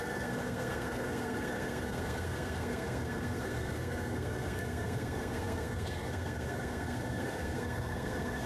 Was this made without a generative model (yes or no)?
no